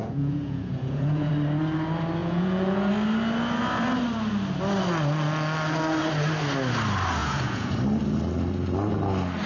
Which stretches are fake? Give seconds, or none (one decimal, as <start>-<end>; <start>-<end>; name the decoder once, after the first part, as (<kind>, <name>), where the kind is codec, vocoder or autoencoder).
0.0-1.3 (vocoder, Vocos); 2.2-2.9; 7.2-7.7